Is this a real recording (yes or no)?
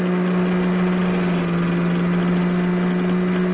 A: yes